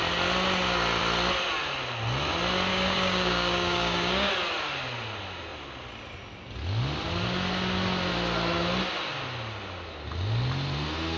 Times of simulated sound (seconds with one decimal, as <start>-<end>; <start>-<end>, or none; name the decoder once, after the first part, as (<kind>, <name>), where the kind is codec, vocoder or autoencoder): 2.7-4.3 (codec, DAC)